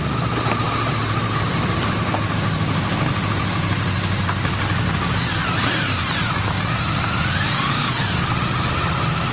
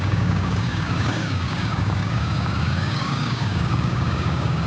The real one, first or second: first